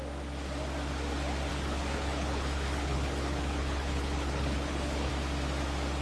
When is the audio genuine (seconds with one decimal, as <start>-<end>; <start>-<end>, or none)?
0.0-1.5; 5.1-6.0